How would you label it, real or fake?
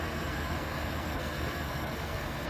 fake